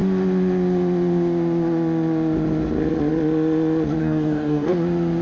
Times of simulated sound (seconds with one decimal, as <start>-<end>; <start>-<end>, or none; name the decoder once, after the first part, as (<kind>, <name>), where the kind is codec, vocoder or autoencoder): 4.0-4.7 (codec, DAC)